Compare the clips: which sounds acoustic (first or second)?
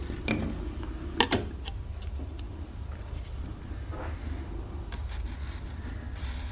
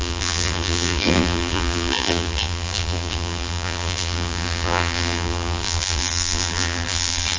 first